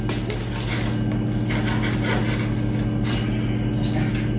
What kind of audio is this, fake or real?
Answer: real